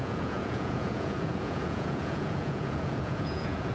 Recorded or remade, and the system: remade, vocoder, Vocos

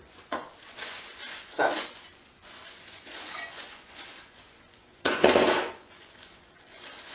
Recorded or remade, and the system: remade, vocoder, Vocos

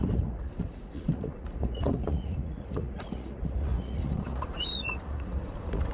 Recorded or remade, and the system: remade, vocoder, Vocos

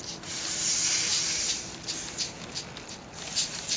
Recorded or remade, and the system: recorded